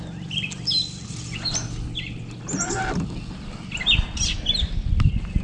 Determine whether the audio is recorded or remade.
recorded